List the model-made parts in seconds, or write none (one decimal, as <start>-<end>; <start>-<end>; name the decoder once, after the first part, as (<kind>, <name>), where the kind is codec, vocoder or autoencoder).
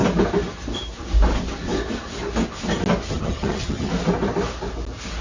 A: 3.1-3.9 (vocoder, HiFi-GAN)